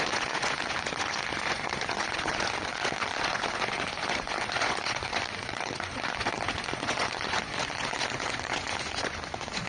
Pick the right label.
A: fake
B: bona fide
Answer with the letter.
A